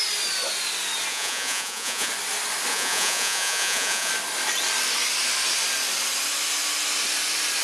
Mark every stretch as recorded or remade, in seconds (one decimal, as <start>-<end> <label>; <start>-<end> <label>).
0.0-1.1 recorded; 1.1-2.1 remade; 2.1-2.7 recorded; 2.7-4.1 remade; 4.1-7.6 recorded